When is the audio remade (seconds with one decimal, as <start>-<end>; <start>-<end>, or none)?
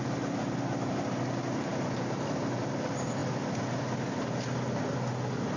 none